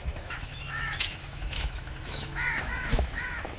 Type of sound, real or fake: fake